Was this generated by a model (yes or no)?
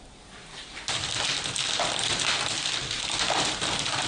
no